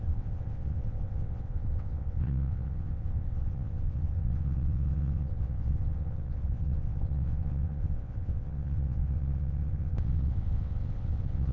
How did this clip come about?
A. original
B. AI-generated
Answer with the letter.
B